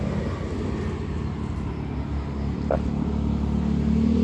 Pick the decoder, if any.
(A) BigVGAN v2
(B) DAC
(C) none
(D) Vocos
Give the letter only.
C